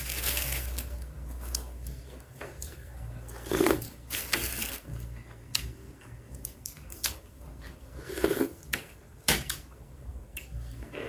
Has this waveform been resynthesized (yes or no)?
yes